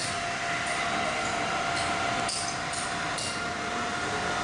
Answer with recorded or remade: recorded